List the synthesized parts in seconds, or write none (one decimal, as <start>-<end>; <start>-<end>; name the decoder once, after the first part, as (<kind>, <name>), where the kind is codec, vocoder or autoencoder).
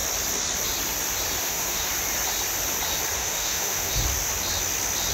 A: 1.4-1.9 (autoencoder, DAC-VAE); 3.2-3.9